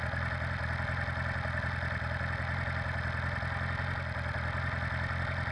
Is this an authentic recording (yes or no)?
yes